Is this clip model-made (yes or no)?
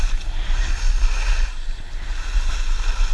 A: no